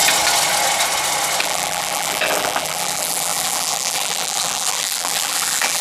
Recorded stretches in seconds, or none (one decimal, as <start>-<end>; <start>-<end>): 0.0-1.4